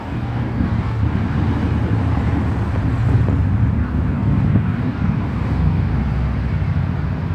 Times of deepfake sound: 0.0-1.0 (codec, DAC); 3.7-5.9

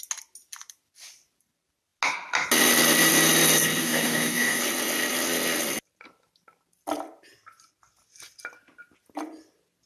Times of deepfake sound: 3.8-4.6 (codec, DAC)

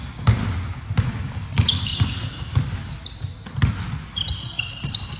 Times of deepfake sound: 0.0-0.4 (codec, DAC); 1.0-1.9

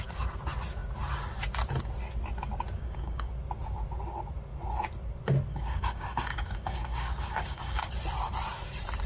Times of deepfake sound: 2.8-3.3 (codec, DAC); 5.5-7.9

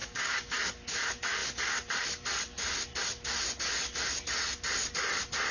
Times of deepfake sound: 0.0-0.6 (codec, DAC)